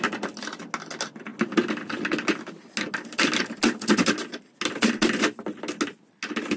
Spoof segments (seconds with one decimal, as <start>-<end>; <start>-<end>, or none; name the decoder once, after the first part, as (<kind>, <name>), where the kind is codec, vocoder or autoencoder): none